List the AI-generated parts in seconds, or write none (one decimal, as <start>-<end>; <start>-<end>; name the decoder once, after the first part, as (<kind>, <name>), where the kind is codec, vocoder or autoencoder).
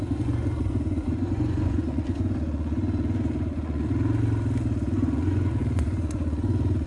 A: 0.0-3.9 (vocoder, Vocos); 4.9-6.9